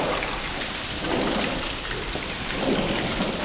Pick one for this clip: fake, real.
fake